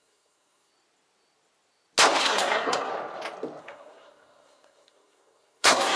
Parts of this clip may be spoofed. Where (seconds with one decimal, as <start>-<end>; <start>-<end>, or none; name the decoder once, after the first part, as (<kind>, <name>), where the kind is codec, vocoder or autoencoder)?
0.0-0.7 (codec, SNAC); 2.2-2.9; 3.6-6.0